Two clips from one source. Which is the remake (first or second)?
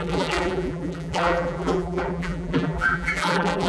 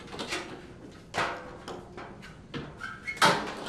first